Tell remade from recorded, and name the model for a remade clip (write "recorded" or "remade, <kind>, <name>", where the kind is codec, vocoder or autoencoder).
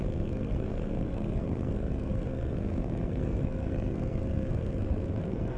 remade, codec, SNAC